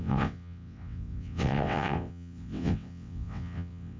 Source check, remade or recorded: remade